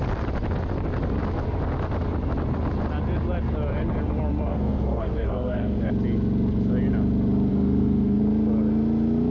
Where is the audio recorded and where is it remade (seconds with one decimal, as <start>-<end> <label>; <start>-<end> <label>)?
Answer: 0.0-4.5 recorded; 4.5-5.9 remade; 5.9-7.5 recorded; 7.5-8.2 remade; 8.2-9.3 recorded